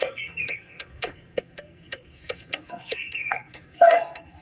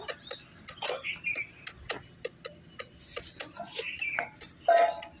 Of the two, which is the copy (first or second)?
first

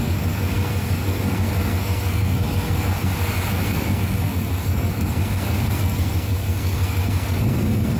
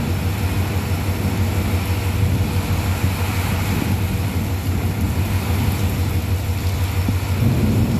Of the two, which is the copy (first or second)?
first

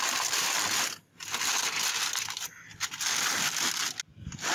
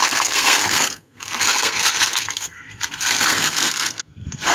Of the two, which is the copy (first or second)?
second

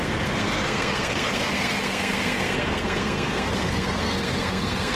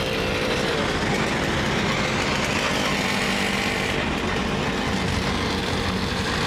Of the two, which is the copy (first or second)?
first